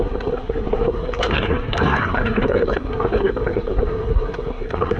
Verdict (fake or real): fake